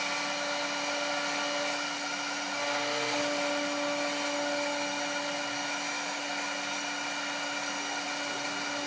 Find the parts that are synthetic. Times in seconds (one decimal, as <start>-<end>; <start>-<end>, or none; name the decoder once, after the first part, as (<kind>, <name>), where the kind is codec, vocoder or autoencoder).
5.6-6.2 (autoencoder, DAC-VAE)